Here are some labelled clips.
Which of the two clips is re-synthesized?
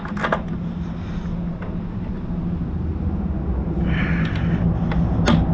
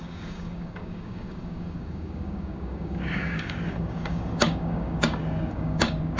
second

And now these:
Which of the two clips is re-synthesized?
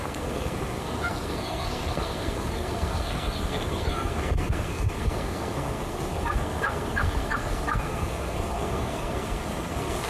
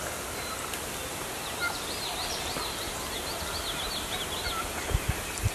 first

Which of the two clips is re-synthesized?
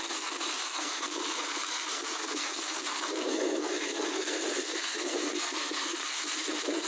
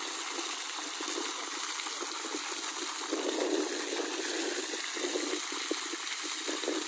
first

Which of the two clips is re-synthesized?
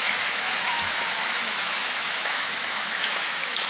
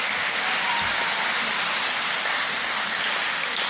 first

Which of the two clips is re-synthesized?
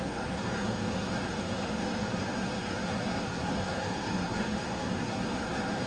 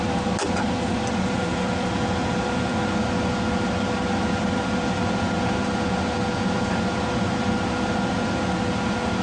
first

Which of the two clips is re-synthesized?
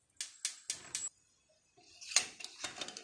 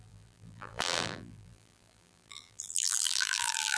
second